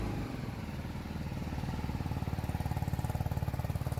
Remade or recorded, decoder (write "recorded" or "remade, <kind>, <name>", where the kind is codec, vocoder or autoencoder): recorded